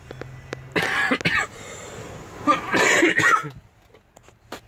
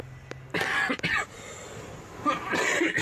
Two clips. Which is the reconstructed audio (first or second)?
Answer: second